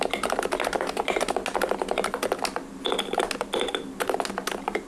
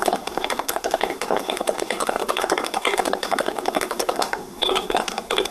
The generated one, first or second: second